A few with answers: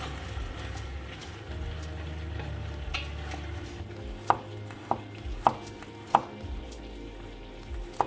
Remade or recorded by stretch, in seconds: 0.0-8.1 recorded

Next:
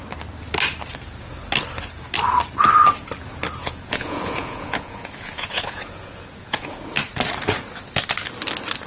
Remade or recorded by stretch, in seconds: 0.0-3.6 recorded; 3.6-6.8 remade; 6.8-8.9 recorded

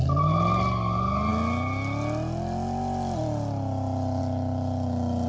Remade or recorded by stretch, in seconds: 0.0-5.3 recorded

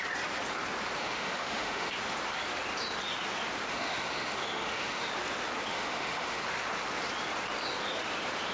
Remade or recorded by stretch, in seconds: 0.0-1.0 recorded; 1.0-1.9 remade; 1.9-3.7 recorded; 3.7-5.1 remade; 5.1-5.7 recorded; 5.7-6.4 remade; 6.4-8.5 recorded

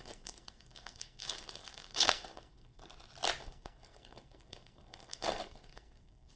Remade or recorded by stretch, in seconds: 0.0-2.8 remade; 2.8-3.4 recorded; 3.4-6.4 remade